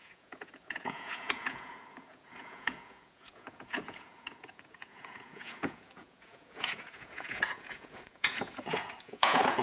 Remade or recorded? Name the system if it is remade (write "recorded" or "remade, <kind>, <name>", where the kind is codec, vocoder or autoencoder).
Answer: remade, vocoder, Vocos